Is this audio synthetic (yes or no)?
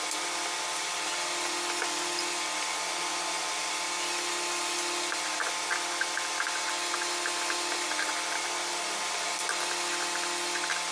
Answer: no